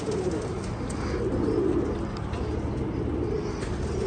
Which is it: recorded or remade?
recorded